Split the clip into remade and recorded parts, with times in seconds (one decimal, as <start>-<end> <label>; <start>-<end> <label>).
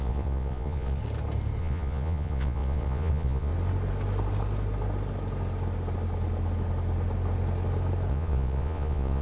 0.0-1.0 remade; 1.0-1.6 recorded; 1.6-3.5 remade; 3.5-8.1 recorded; 8.1-9.2 remade